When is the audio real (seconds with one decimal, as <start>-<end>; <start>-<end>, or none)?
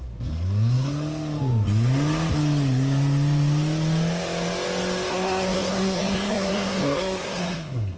0.9-5.1